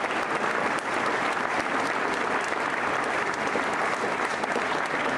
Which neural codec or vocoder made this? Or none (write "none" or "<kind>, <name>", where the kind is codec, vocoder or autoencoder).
none